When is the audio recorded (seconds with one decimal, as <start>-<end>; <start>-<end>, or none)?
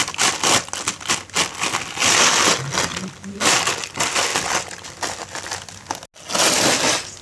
0.0-7.2